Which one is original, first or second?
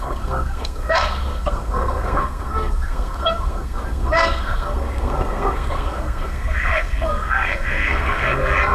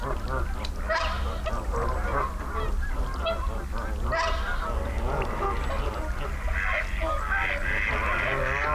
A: second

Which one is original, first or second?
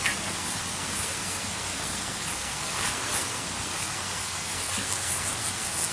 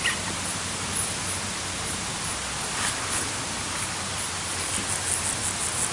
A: second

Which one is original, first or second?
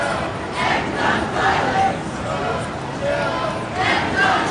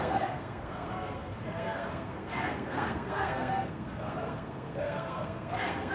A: first